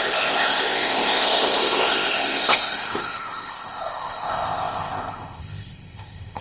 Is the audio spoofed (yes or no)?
yes